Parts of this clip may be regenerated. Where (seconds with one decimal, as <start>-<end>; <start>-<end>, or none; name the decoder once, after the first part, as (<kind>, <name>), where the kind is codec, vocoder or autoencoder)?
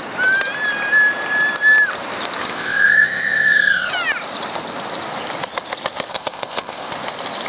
2.4-3.9 (codec, ZipCodec); 6.1-6.9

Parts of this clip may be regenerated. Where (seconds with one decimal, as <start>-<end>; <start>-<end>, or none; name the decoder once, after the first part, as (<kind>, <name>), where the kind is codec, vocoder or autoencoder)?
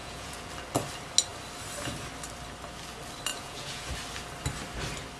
0.0-0.5 (vocoder, Vocos); 3.3-3.9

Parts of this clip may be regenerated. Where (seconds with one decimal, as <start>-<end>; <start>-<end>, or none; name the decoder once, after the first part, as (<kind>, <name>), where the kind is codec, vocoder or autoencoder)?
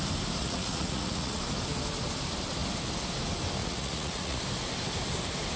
0.4-1.4 (vocoder, Vocos); 3.6-4.4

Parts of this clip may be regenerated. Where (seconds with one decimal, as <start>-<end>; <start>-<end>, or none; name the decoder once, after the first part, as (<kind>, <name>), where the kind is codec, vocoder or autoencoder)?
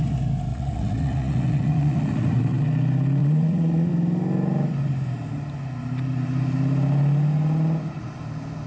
0.5-2.6 (vocoder, Vocos); 3.2-3.9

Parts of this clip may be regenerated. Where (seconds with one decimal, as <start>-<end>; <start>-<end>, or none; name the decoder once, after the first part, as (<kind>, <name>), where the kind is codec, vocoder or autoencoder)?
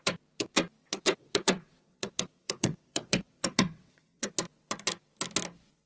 0.8-4.3 (vocoder, WaveNeXt)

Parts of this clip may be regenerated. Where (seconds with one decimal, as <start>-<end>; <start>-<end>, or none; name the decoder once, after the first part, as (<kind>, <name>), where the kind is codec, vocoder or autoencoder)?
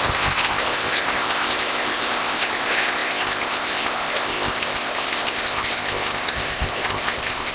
0.0-7.5 (codec, ZipCodec)